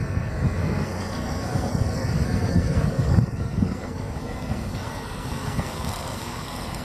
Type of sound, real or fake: fake